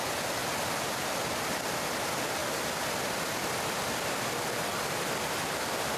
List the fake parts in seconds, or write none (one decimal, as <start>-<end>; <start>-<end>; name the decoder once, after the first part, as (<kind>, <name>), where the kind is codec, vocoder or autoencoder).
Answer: none